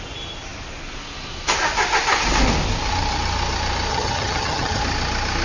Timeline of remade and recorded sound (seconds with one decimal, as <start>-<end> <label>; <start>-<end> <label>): 0.0-3.9 recorded; 3.9-4.8 remade; 4.8-5.4 recorded

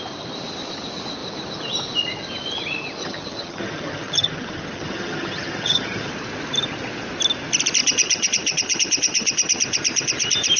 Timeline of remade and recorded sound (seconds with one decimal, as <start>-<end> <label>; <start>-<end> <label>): 0.0-3.0 recorded; 3.0-6.1 remade; 6.1-7.8 recorded; 7.8-9.6 remade; 9.6-10.6 recorded

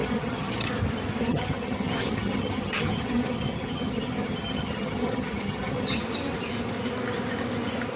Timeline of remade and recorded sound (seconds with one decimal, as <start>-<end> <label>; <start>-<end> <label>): 0.0-0.7 remade; 0.7-1.2 recorded; 1.2-6.0 remade; 6.0-8.0 recorded

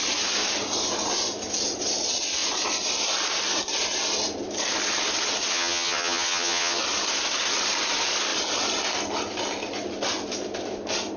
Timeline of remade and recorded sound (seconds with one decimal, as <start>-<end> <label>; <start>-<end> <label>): 0.0-5.5 recorded; 5.5-6.8 remade; 6.8-11.2 recorded

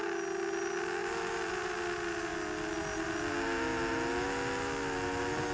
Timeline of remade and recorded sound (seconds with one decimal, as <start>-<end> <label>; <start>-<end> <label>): 0.0-5.5 recorded